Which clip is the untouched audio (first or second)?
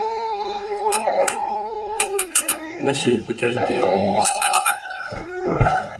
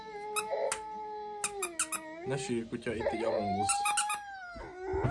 second